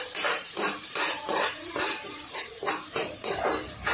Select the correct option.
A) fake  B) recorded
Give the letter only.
A